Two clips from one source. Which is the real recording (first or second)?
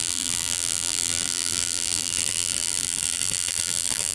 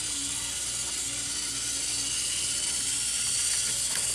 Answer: second